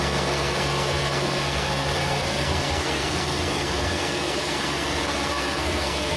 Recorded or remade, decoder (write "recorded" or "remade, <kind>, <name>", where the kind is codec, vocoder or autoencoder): remade, codec, SNAC